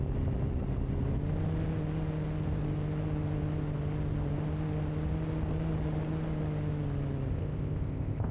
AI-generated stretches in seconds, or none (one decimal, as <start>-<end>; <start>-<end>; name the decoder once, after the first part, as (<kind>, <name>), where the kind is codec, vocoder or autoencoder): 7.3-8.3 (codec, ZipCodec)